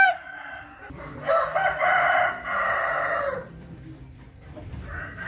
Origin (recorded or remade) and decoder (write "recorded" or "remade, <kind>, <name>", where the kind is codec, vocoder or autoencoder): remade, vocoder, BigVGAN v2